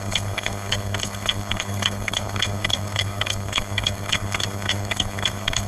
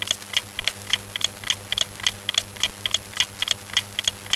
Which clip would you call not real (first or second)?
first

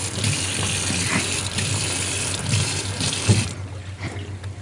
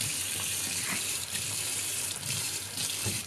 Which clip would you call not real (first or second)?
second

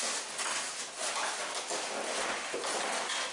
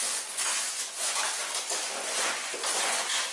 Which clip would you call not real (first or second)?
second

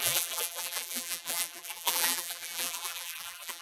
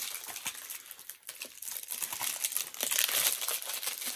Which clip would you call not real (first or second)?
first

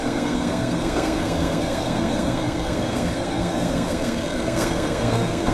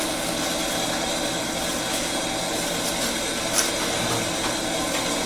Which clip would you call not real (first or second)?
first